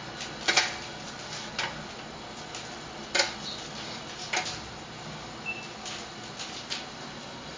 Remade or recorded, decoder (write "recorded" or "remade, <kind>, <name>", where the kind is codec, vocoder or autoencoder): recorded